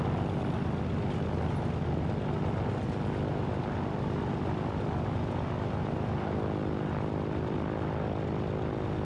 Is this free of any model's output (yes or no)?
yes